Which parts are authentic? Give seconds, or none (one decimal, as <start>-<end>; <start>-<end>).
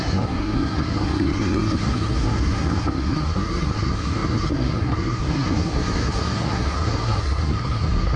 none